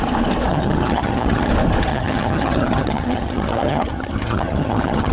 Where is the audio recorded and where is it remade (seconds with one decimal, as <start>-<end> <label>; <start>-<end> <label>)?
0.0-0.5 recorded; 0.5-1.5 remade; 1.5-1.9 recorded; 1.9-5.1 remade